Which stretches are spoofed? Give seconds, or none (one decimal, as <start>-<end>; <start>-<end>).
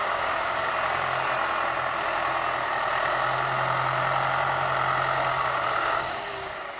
0.0-0.7; 5.3-6.8